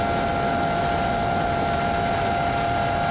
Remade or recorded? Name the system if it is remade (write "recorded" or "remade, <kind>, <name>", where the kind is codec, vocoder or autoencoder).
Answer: recorded